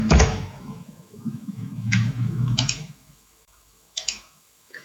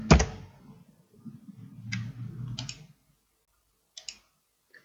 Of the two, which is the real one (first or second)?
second